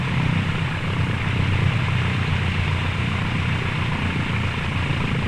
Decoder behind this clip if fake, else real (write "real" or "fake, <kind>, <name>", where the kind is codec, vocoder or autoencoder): real